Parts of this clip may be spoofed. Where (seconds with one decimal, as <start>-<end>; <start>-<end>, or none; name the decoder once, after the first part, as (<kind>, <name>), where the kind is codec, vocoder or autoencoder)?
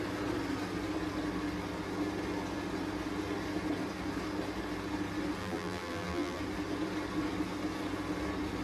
5.4-6.4 (vocoder, BigVGAN v2)